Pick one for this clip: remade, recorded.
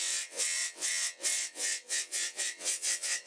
remade